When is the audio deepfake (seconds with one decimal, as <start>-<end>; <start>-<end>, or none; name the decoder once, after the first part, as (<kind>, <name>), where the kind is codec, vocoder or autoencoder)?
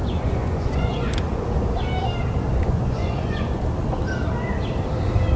0.0-1.4 (vocoder, Vocos); 2.5-3.6